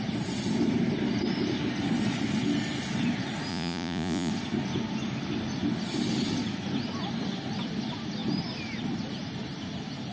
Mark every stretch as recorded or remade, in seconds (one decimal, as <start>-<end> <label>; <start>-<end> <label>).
0.0-3.5 recorded; 3.5-4.3 remade; 4.3-10.1 recorded